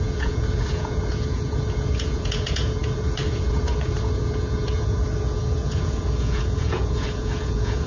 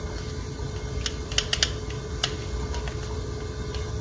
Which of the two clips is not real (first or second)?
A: first